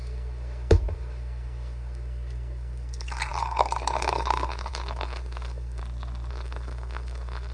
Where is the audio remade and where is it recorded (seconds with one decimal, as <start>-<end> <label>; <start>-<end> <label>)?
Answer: 0.0-5.8 remade; 5.8-6.3 recorded; 6.3-7.5 remade